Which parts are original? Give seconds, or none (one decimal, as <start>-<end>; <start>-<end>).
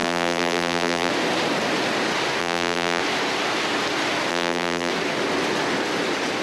1.1-2.4; 3.0-4.3; 4.9-6.4